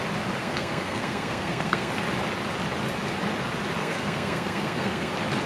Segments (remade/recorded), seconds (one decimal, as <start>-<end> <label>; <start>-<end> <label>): 0.0-0.4 recorded; 0.4-1.9 remade; 1.9-3.8 recorded; 3.8-5.1 remade; 5.1-5.5 recorded